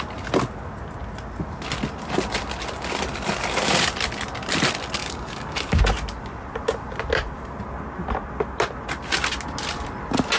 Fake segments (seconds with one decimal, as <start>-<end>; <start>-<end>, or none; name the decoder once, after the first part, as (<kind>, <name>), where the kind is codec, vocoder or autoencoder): 5.0-5.8 (codec, DAC)